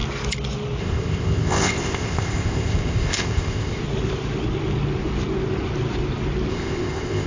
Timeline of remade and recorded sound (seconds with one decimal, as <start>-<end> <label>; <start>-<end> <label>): 0.0-0.8 recorded; 0.8-3.8 remade; 3.8-6.5 recorded; 6.5-7.3 remade